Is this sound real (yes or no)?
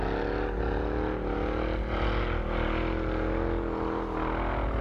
yes